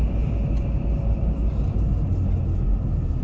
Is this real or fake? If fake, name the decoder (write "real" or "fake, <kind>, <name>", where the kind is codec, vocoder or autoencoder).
real